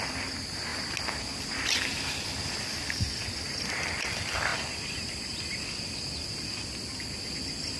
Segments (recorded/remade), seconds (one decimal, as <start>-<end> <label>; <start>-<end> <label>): 0.0-7.8 recorded